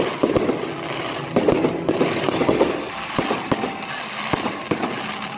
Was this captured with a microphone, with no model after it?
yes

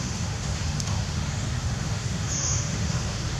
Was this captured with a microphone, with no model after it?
no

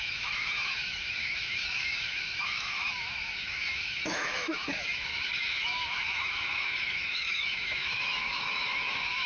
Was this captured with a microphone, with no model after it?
no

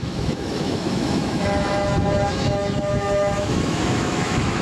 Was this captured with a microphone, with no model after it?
no